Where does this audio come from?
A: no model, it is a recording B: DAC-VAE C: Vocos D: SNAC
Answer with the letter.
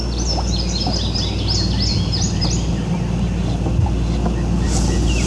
A